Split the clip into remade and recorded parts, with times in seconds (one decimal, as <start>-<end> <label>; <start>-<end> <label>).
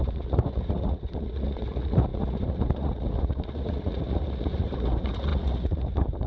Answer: 0.0-6.3 remade